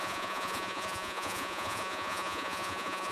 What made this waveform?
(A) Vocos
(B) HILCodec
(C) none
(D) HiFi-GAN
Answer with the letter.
A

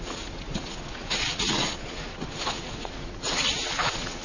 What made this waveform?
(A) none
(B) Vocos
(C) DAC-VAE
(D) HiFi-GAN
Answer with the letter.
B